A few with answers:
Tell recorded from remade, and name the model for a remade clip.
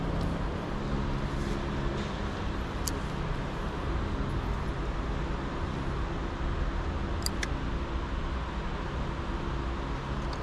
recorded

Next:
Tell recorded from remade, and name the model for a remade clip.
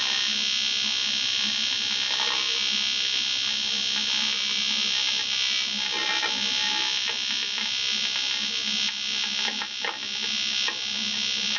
recorded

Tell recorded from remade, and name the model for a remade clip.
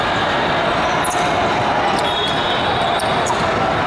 recorded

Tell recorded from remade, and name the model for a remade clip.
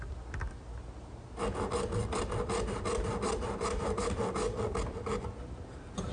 recorded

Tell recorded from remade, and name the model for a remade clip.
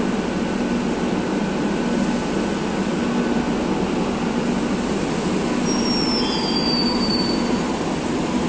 recorded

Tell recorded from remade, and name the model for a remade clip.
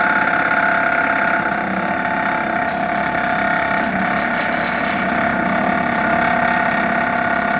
recorded